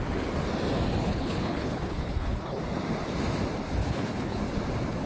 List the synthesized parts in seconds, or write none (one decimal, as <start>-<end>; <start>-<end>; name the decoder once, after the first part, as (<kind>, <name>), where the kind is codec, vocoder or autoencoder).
1.0-2.6 (codec, HILCodec); 3.8-4.4